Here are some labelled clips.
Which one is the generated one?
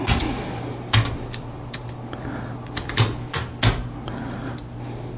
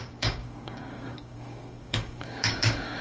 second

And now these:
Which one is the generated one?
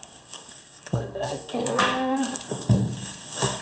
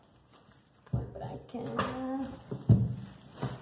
first